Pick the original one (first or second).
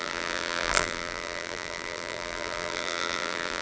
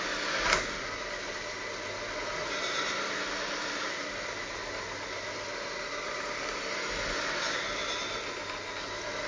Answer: second